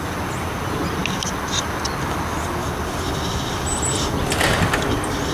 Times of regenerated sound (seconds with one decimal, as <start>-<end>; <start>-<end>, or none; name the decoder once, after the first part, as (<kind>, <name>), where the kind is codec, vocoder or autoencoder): none